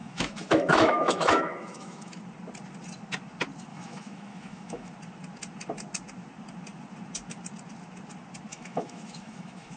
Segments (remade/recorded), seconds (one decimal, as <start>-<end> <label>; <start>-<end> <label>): 0.0-2.2 remade; 2.2-3.7 recorded; 3.7-4.9 remade; 4.9-8.5 recorded; 8.5-9.8 remade